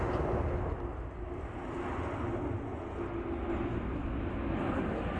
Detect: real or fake real